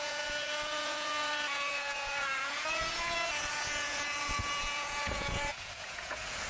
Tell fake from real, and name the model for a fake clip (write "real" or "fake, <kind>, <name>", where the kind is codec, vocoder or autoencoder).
fake, vocoder, Vocos